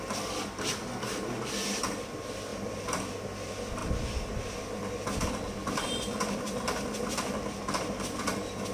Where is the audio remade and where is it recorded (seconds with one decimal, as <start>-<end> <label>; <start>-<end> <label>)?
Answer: 0.0-2.5 recorded; 2.5-3.0 remade; 3.0-8.7 recorded